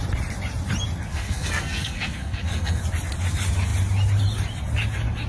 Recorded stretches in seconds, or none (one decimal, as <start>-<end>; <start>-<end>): 0.0-1.1; 2.8-5.3